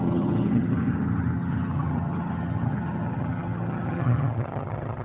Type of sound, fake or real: fake